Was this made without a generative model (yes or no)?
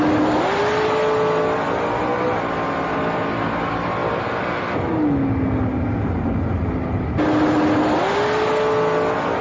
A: yes